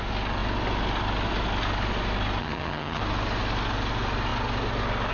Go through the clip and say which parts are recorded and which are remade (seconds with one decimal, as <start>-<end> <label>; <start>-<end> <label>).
0.0-2.4 recorded; 2.4-3.0 remade; 3.0-5.1 recorded